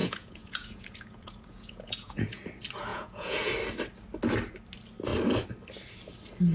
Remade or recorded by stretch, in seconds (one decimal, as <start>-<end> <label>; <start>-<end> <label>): 0.0-2.4 remade; 2.4-2.9 recorded; 2.9-3.5 remade; 3.5-6.5 recorded